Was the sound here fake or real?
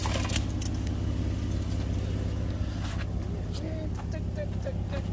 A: real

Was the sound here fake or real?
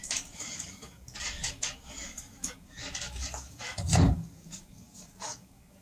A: fake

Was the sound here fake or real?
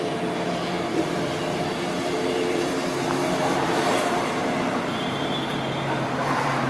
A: fake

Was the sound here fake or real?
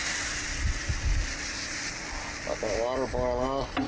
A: real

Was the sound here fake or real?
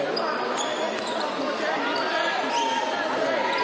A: real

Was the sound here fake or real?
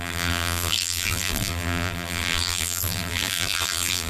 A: fake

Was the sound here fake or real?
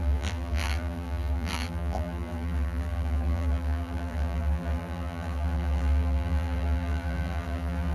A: fake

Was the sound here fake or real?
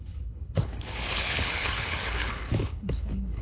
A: fake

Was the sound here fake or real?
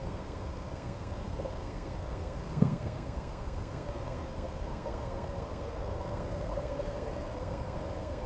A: fake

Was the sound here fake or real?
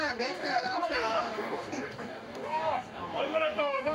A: fake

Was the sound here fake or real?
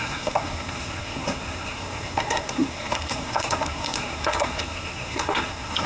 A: fake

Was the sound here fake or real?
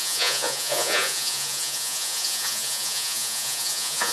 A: fake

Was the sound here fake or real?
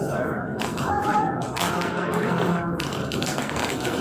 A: fake